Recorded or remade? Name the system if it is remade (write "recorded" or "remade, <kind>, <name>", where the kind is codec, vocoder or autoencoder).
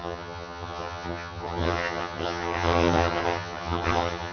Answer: remade, vocoder, HiFi-GAN